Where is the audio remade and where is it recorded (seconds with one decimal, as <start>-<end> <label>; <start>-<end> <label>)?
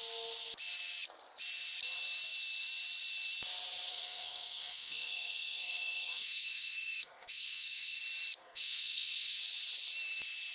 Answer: 0.0-3.9 recorded; 3.9-8.0 remade; 8.0-8.4 recorded; 8.4-9.4 remade; 9.4-10.5 recorded